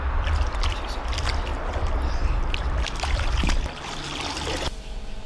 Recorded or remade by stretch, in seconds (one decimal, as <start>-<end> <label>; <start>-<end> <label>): 0.0-1.5 recorded; 1.5-4.7 remade; 4.7-5.3 recorded